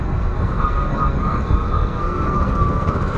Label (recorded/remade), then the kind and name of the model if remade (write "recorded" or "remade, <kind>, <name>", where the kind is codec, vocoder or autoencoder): remade, codec, SNAC